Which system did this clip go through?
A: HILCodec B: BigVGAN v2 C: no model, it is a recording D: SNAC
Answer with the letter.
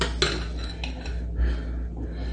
C